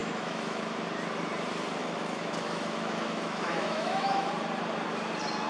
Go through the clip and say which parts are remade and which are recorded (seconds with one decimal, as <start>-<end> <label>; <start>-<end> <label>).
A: 0.0-0.6 remade; 0.6-1.8 recorded; 1.8-4.3 remade; 4.3-5.5 recorded